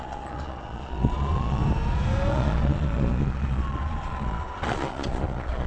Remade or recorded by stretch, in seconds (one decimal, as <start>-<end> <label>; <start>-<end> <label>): 0.0-1.6 remade; 1.6-2.3 recorded; 2.3-5.7 remade

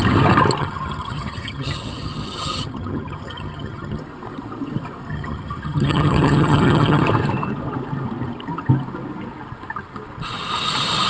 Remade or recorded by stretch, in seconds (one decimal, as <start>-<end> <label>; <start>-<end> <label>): 0.0-0.6 recorded; 0.6-4.0 remade; 4.0-5.1 recorded; 5.1-7.0 remade; 7.0-11.1 recorded